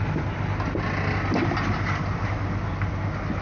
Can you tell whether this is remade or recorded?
recorded